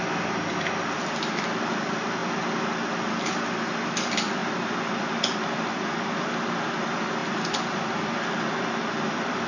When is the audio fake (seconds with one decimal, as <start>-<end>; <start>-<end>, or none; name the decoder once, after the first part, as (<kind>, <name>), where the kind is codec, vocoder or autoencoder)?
0.0-2.2 (vocoder, BigVGAN v2); 3.5-9.5